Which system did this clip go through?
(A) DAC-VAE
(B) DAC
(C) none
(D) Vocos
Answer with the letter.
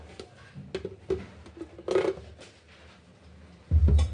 C